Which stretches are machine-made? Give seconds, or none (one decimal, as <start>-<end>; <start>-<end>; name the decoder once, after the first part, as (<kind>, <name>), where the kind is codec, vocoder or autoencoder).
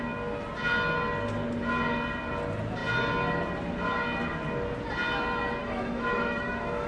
5.6-6.9 (autoencoder, DAC-VAE)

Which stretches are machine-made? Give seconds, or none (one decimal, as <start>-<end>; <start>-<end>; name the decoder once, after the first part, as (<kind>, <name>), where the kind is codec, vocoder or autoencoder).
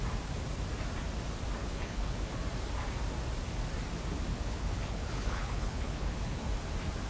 1.6-2.3 (codec, HILCodec); 4.3-6.5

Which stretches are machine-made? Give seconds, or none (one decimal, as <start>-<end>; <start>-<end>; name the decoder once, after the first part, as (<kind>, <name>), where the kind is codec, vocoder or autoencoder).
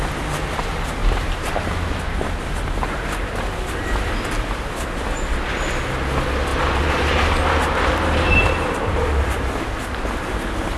1.0-1.7 (vocoder, BigVGAN v2); 6.5-9.5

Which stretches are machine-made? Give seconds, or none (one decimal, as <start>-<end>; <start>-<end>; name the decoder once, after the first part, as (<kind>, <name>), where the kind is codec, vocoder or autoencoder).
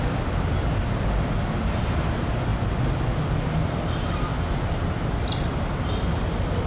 none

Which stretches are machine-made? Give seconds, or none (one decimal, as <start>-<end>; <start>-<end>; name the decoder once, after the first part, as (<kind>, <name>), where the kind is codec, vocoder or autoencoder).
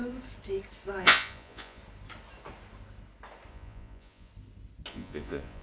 1.0-1.8 (vocoder, Vocos); 3.5-4.3; 4.9-5.6